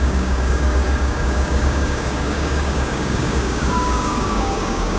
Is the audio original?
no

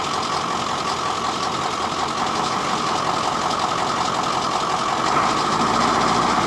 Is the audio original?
yes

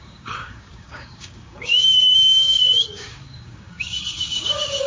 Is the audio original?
no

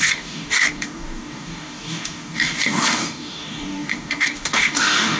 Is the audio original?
no